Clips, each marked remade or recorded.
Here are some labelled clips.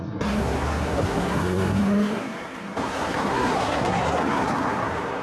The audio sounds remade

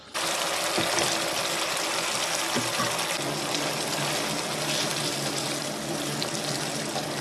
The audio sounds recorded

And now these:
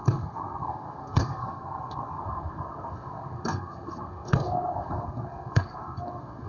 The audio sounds remade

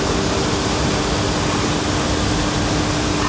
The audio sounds recorded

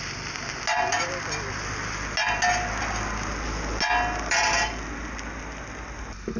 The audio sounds recorded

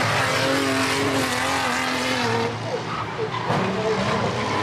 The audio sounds recorded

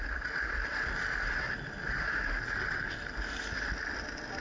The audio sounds recorded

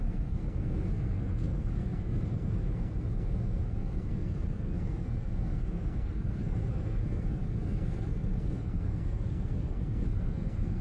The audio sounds remade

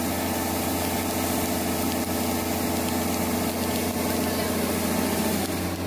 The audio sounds recorded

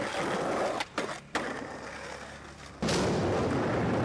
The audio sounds recorded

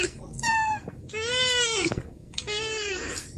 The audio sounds remade